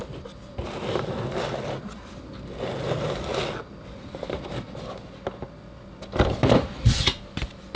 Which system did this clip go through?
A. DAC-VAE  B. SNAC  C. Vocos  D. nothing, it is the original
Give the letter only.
D